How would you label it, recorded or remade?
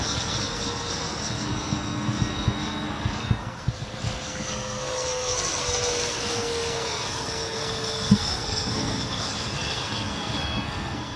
remade